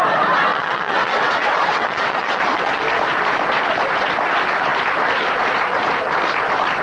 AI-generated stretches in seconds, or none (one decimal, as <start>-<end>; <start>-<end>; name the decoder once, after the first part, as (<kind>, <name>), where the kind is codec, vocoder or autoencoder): 0.5-2.8 (vocoder, WaveNeXt)